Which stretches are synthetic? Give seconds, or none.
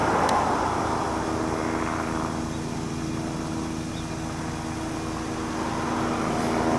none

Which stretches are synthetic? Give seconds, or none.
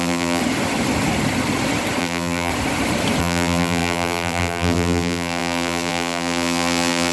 0.0-0.4; 2.0-2.5; 3.2-7.1